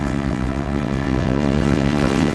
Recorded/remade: remade